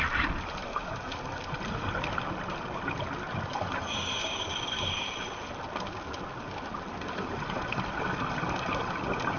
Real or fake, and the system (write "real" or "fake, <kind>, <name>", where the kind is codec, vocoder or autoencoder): real